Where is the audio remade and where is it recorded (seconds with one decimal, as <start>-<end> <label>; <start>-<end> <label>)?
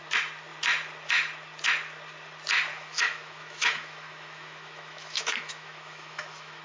0.0-2.7 recorded; 2.7-6.6 remade